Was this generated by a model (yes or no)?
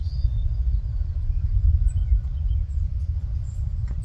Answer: yes